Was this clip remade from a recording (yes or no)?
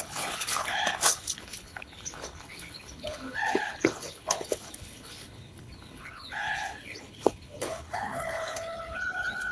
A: yes